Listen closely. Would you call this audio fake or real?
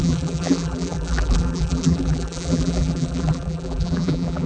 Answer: fake